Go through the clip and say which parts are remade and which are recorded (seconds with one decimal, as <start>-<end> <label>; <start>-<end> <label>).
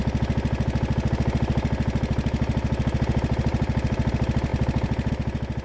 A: 0.0-3.5 recorded; 3.5-4.1 remade; 4.1-4.5 recorded; 4.5-5.1 remade; 5.1-5.6 recorded